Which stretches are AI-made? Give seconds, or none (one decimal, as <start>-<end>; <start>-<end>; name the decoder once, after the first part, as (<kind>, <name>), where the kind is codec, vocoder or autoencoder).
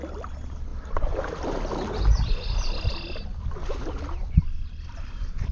0.7-3.7 (vocoder, BigVGAN v2); 4.2-5.5